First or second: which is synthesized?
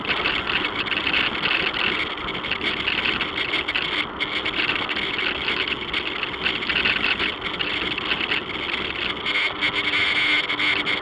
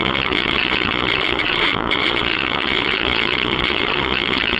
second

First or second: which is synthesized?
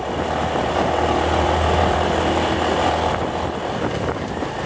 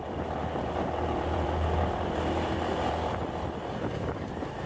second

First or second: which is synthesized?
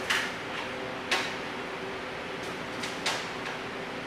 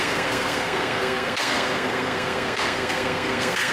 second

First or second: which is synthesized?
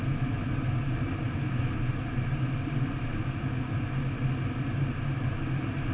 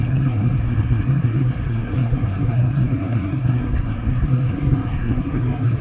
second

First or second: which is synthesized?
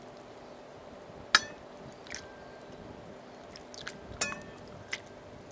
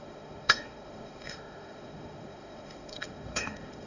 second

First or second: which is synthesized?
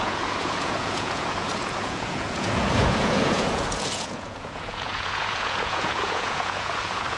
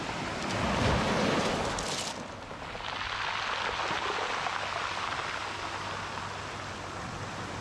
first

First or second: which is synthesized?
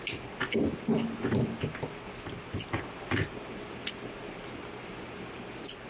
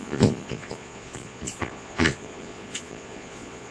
second